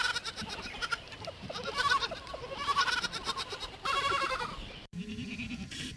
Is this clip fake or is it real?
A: fake